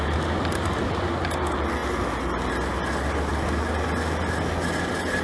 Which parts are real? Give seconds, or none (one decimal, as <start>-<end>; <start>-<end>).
0.0-5.2